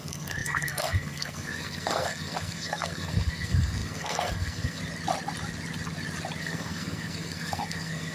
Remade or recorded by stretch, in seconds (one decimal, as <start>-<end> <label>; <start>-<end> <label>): 0.0-4.8 remade; 4.8-6.4 recorded; 6.4-8.1 remade